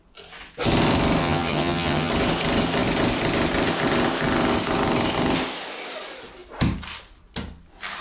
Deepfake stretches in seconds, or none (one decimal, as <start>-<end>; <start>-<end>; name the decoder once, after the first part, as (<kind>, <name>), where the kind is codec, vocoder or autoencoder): 1.2-2.1 (vocoder, HiFi-GAN)